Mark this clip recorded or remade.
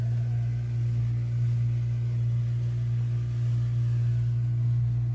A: recorded